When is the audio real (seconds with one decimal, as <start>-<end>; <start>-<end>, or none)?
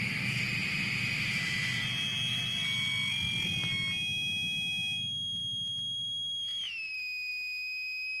0.0-8.2